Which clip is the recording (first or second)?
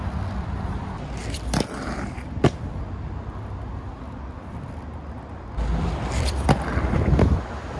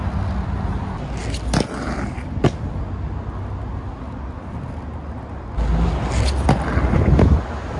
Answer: second